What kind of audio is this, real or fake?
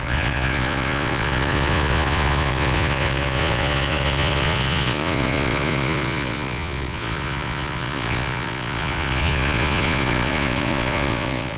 fake